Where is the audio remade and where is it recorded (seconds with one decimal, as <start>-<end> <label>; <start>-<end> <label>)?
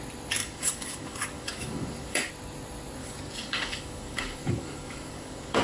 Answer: 0.0-0.4 recorded; 0.4-2.3 remade; 2.3-3.0 recorded; 3.0-5.6 remade